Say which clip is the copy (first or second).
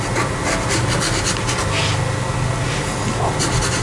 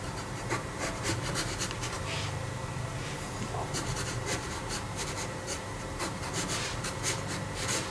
second